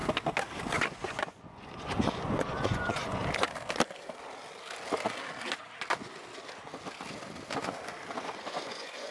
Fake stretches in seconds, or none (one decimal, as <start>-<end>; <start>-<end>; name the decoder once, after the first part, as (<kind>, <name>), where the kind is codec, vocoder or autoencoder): 0.7-3.2 (vocoder, Vocos); 8.2-9.1